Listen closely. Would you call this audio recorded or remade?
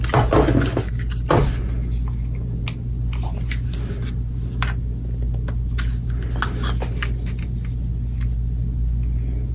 recorded